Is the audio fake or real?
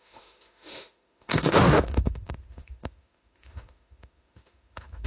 fake